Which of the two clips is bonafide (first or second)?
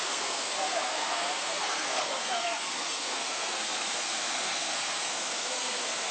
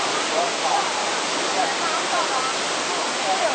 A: second